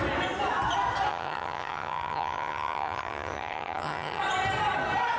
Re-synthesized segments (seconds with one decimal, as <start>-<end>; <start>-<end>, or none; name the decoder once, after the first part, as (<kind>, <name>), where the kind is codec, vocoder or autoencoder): 1.1-4.2 (vocoder, HiFi-GAN)